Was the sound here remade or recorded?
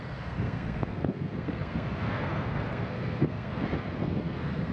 remade